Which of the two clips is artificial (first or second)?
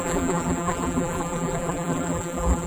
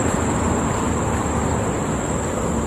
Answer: first